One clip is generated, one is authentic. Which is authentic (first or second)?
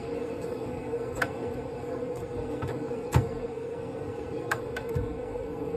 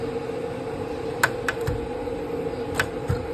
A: second